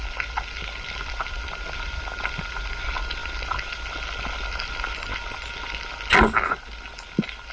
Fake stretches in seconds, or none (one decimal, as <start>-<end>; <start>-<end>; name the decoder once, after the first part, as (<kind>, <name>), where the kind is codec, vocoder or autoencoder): none